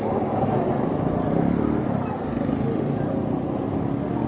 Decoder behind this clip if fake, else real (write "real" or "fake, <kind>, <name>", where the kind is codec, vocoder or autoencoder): real